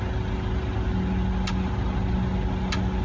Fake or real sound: real